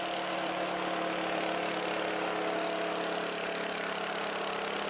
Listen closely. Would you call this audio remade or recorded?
recorded